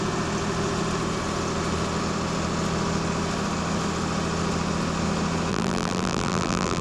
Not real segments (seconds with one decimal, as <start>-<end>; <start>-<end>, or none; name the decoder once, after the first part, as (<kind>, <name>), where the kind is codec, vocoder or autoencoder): 5.5-6.8 (vocoder, BigVGAN v2)